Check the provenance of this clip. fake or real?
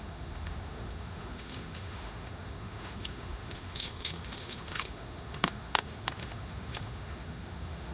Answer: fake